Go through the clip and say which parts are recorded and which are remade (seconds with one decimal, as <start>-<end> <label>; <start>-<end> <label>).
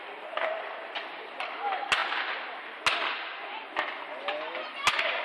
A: 0.0-5.2 recorded